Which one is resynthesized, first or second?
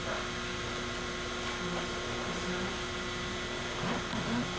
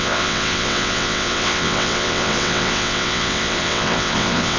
second